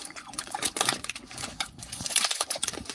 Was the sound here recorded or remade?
remade